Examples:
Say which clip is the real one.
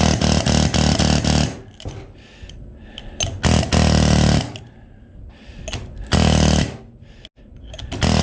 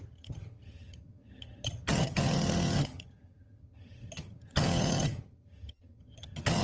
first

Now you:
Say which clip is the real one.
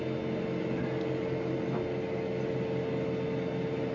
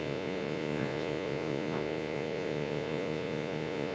first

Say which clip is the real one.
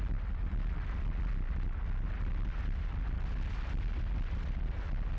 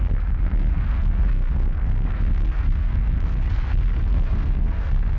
first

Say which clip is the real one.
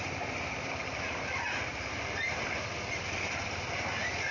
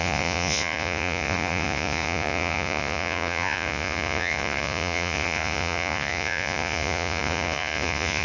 first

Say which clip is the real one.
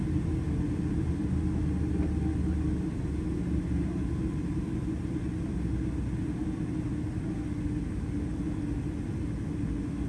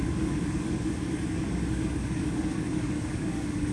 first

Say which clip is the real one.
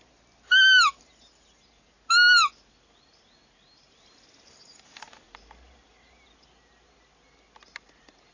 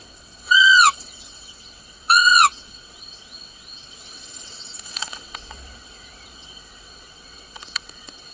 first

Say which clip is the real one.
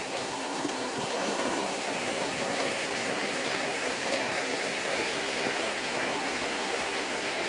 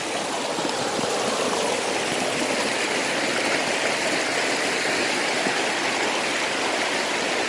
second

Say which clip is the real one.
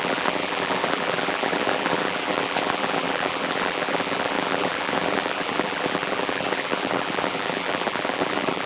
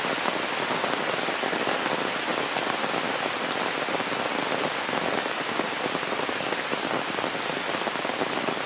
second